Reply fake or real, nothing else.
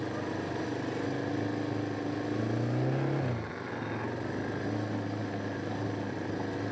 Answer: real